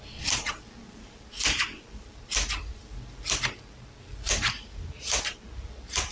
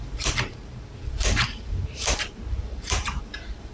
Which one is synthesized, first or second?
second